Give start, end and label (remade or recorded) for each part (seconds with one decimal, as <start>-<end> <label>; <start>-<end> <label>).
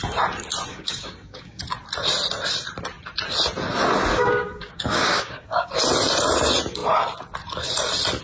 0.0-0.7 recorded; 0.7-1.6 remade; 1.6-4.1 recorded; 4.1-5.7 remade; 5.7-8.2 recorded